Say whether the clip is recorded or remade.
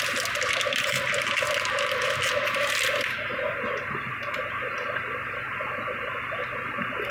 recorded